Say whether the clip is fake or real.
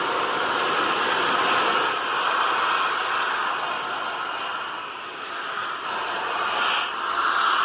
real